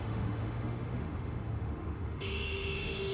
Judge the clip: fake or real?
fake